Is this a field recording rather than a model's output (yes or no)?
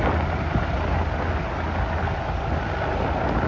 yes